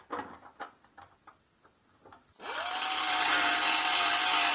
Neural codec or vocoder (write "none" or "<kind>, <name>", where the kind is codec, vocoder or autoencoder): none